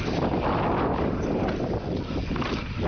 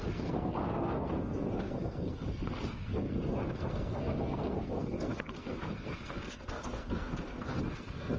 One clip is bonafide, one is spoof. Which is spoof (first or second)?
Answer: second